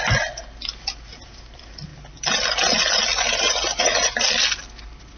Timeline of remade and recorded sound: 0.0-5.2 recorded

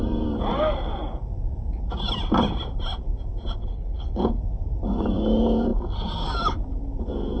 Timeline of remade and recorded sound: 0.0-3.6 recorded; 3.6-4.3 remade; 4.3-7.4 recorded

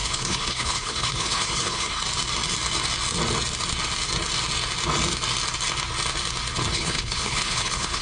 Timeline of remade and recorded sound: 0.0-1.9 remade; 1.9-6.7 recorded; 6.7-8.0 remade

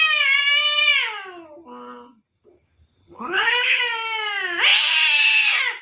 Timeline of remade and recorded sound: 0.0-3.0 recorded; 3.0-3.8 remade; 3.8-5.8 recorded

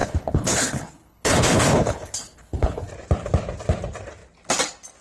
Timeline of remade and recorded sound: 0.0-2.9 remade; 2.9-5.0 recorded